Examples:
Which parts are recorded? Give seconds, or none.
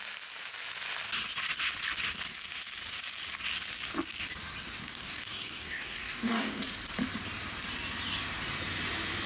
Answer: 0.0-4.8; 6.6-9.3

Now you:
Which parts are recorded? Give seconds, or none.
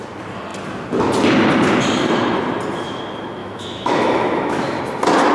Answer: 0.0-3.4; 4.8-5.3